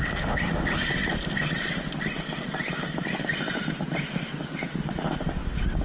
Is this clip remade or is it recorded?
recorded